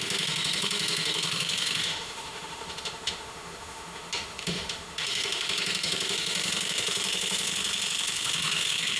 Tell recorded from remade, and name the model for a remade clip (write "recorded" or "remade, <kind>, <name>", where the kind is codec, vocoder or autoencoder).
remade, autoencoder, DAC-VAE